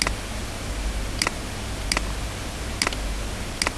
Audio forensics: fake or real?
real